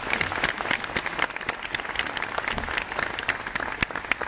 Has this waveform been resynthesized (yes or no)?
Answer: no